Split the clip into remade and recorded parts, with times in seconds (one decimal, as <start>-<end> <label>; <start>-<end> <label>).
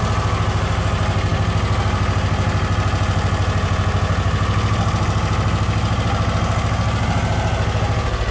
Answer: 0.0-8.3 recorded